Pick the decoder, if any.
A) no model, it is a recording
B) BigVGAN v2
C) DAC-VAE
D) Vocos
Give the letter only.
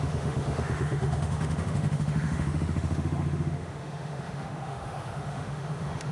C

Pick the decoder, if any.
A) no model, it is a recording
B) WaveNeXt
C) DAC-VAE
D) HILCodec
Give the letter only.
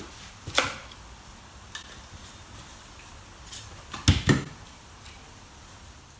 A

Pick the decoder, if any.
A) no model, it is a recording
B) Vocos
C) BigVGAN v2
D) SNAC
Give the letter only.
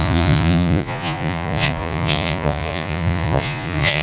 B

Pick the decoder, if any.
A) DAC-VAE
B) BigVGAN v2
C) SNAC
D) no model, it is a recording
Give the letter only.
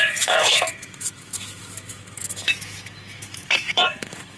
A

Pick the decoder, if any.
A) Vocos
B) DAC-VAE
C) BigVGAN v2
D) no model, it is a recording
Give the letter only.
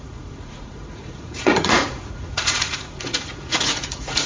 A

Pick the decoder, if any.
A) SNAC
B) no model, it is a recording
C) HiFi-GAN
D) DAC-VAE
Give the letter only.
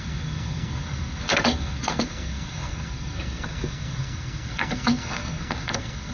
A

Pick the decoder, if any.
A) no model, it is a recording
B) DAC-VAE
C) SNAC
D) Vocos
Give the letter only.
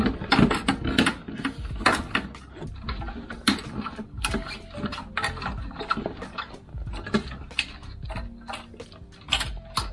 A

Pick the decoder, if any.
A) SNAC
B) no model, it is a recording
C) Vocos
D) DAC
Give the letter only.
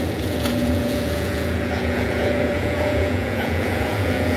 C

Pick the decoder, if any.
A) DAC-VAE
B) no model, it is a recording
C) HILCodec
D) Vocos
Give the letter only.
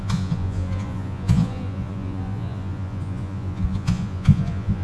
D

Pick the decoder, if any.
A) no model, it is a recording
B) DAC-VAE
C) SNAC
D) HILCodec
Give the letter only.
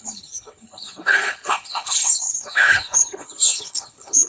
D